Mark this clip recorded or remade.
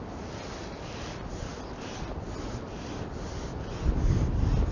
recorded